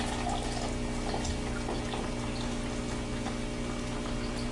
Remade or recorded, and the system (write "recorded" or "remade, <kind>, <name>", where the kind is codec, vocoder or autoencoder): recorded